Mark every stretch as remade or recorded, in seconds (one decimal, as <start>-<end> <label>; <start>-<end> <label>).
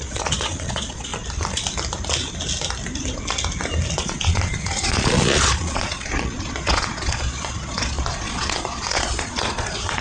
0.0-1.1 remade; 1.1-4.0 recorded; 4.0-10.0 remade